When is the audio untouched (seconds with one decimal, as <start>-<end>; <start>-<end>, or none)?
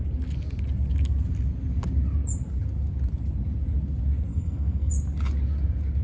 0.0-4.3; 4.9-6.0